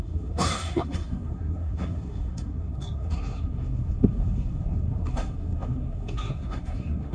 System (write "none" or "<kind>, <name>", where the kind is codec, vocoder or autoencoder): codec, SNAC